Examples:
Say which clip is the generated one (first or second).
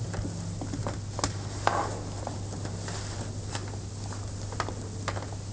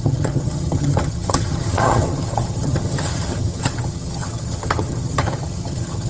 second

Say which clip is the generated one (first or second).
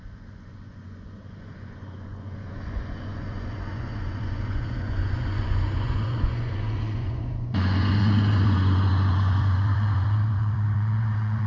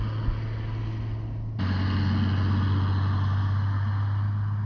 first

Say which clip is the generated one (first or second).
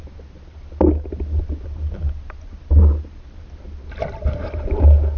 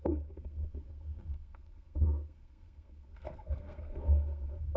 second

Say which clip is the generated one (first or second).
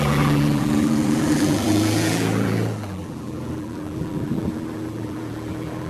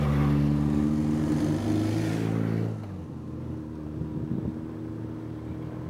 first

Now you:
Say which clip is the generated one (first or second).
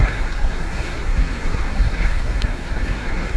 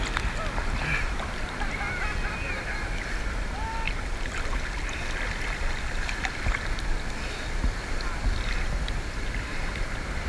first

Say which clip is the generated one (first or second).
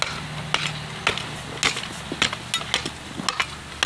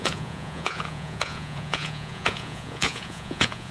second